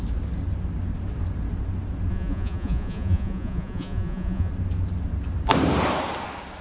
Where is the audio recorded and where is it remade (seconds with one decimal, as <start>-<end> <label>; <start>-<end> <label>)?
0.0-2.1 recorded; 2.1-4.5 remade; 4.5-6.6 recorded